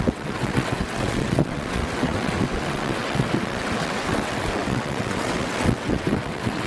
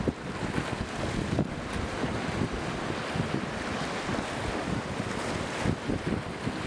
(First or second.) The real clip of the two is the second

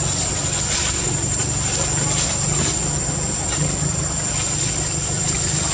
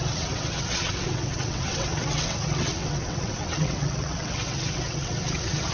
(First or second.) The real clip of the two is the first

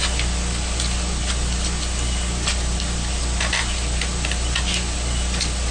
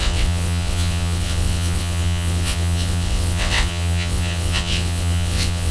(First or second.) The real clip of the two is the first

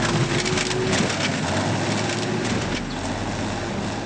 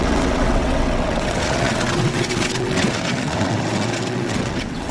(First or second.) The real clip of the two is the first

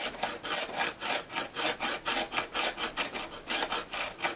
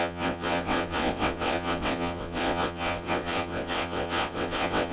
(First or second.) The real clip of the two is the first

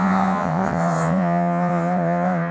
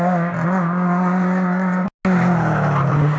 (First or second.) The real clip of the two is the second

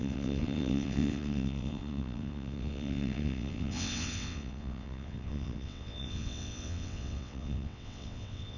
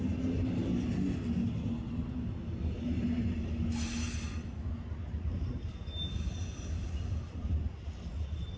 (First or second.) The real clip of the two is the second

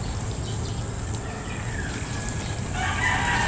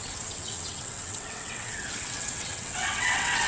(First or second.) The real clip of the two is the first